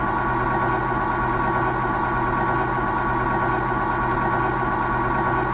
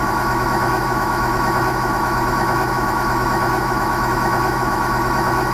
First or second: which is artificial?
second